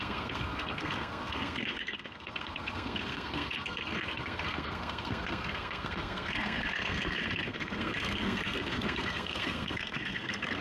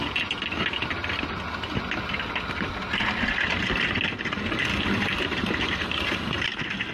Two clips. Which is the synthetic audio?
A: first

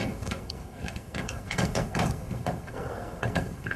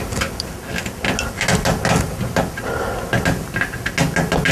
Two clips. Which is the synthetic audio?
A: first